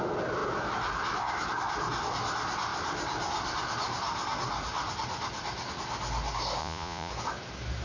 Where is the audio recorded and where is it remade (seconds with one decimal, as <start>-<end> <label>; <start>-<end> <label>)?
0.0-6.6 recorded; 6.6-7.1 remade; 7.1-7.8 recorded

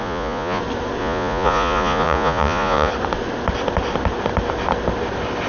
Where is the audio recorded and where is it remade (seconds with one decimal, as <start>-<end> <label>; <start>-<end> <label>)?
0.0-0.6 remade; 0.6-1.0 recorded; 1.0-2.9 remade; 2.9-5.5 recorded